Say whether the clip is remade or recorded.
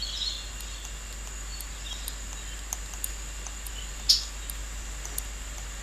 recorded